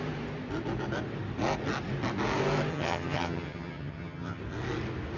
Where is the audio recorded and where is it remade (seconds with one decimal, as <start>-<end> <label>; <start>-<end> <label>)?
0.0-2.7 recorded; 2.7-4.4 remade; 4.4-5.2 recorded